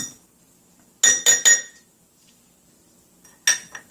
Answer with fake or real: real